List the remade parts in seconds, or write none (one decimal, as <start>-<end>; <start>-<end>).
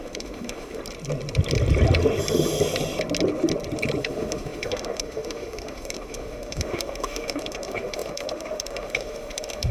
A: 0.0-0.8; 4.0-9.7